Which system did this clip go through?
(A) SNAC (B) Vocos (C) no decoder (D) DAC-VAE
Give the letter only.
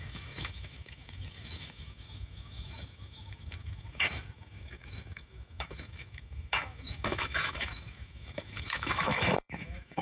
D